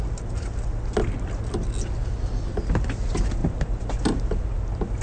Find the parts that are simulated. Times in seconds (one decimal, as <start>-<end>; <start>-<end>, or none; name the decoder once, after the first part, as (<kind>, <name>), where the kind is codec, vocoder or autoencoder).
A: none